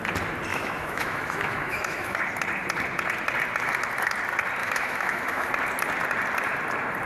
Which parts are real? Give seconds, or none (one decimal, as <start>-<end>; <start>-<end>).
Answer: 0.0-0.5; 2.2-4.6; 5.5-7.1